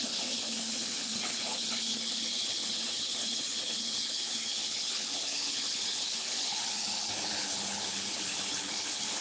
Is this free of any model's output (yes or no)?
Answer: no